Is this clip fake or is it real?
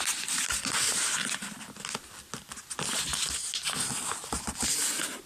real